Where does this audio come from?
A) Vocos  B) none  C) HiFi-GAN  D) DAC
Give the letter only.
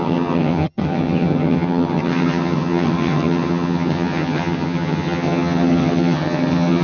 C